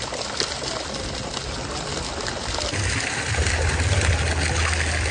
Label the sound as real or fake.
real